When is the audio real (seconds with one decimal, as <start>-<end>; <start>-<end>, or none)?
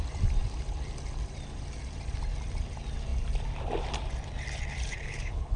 0.0-4.9